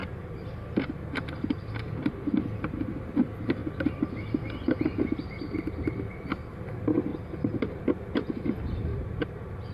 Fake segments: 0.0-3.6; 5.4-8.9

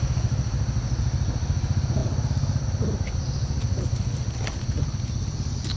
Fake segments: none

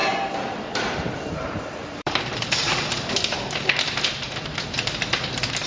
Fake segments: 0.0-3.1

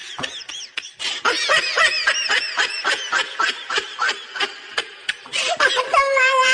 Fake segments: 2.9-3.9; 4.7-6.5